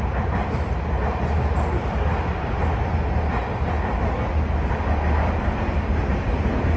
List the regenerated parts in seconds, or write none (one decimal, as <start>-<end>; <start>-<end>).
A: none